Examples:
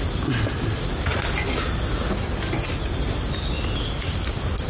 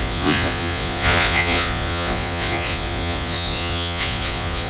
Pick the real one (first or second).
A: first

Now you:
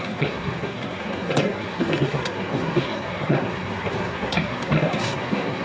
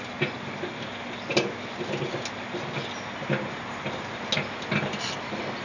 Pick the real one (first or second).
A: second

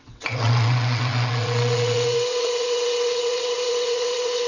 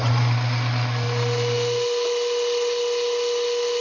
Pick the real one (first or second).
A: second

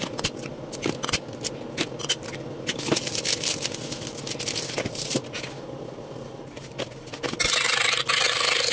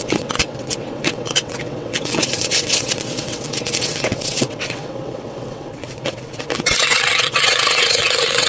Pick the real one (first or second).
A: first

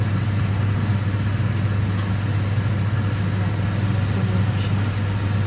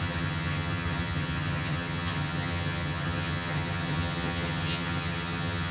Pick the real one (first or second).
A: first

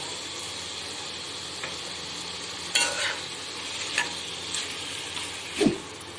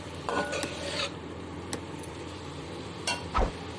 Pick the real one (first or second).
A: first